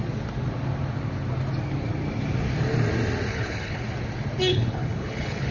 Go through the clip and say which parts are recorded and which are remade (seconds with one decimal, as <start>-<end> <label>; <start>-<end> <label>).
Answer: 0.0-3.3 recorded; 3.3-3.8 remade; 3.8-4.5 recorded; 4.5-5.5 remade